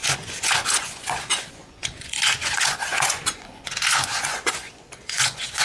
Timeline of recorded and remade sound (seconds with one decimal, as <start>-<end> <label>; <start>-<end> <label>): 0.0-5.6 remade